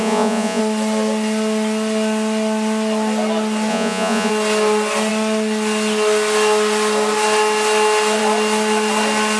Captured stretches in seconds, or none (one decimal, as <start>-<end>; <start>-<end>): 0.6-3.7; 4.3-9.4